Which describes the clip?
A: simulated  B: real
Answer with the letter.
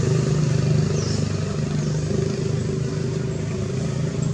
B